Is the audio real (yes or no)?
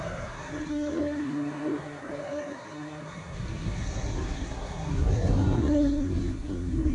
no